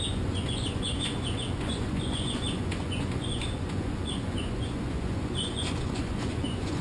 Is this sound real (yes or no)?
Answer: no